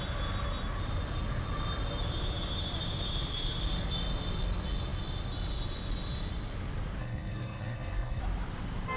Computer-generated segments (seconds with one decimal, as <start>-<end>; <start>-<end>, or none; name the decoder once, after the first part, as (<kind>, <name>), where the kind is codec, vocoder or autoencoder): 7.0-8.2 (codec, SNAC)